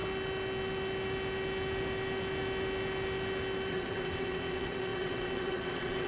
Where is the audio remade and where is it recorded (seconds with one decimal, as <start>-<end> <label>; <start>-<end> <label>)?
0.0-3.7 recorded; 3.7-6.1 remade

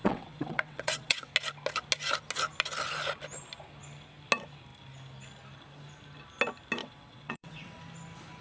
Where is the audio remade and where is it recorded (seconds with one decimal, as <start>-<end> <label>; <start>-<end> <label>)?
0.0-1.3 remade; 1.3-6.8 recorded; 6.8-7.8 remade; 7.8-8.4 recorded

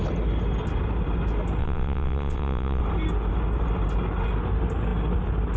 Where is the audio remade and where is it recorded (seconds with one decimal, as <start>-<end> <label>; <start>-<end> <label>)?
0.0-1.6 recorded; 1.6-2.8 remade; 2.8-5.6 recorded

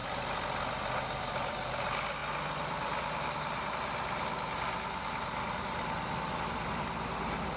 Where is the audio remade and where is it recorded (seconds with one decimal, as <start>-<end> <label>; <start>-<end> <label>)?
0.0-7.6 recorded

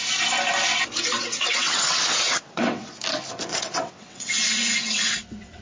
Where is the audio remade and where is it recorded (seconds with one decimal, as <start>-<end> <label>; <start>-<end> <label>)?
0.0-1.1 recorded; 1.1-2.9 remade; 2.9-3.5 recorded; 3.5-5.6 remade

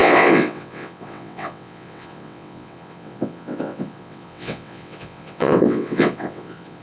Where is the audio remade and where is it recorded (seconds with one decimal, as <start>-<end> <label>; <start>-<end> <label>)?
0.0-6.8 remade

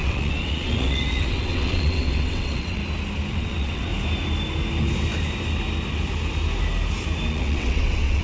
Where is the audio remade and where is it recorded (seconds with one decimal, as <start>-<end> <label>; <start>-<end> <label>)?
0.0-2.8 remade; 2.8-3.3 recorded; 3.3-3.9 remade; 3.9-7.3 recorded; 7.3-8.2 remade